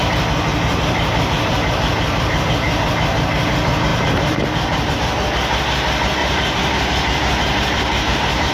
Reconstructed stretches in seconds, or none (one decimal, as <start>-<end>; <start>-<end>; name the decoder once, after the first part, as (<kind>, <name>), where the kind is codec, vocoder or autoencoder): 0.7-2.4 (vocoder, BigVGAN v2); 3.9-4.9; 6.2-8.5